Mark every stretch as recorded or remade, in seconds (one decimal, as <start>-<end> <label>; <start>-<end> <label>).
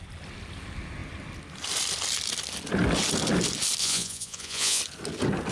0.0-3.8 recorded; 3.8-4.8 remade; 4.8-5.5 recorded